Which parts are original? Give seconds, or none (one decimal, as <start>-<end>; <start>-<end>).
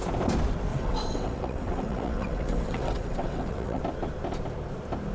0.0-0.7; 3.8-5.1